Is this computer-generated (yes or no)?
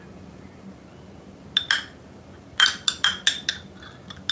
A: no